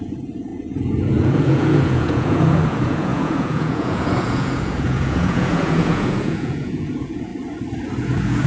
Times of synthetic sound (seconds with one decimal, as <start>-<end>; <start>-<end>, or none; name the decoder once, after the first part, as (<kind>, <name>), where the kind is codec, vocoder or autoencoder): 0.0-7.3 (vocoder, Vocos); 8.0-8.5